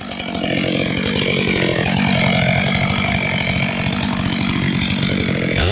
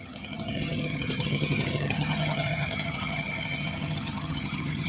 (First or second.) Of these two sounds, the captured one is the first